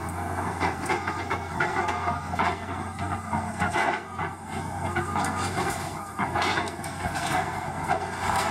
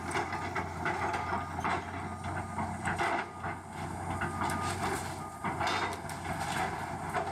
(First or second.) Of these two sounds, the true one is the second